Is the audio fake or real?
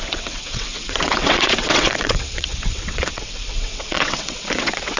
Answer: fake